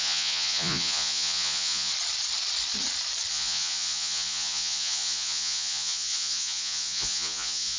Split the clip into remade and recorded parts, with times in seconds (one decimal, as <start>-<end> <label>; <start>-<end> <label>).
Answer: 0.0-1.9 remade; 1.9-3.3 recorded; 3.3-7.8 remade